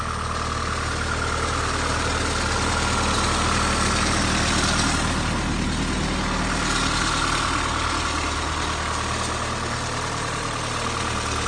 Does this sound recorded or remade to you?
recorded